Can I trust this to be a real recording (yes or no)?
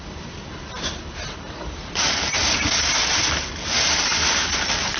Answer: yes